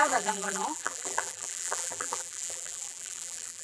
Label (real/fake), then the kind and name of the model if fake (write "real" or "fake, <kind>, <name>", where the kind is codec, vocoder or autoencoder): fake, vocoder, BigVGAN v2